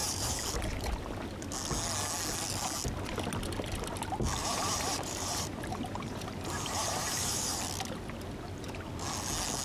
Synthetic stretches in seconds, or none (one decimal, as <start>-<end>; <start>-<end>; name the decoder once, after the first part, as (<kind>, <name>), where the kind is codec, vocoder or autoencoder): 0.0-0.9 (vocoder, BigVGAN v2); 4.4-7.6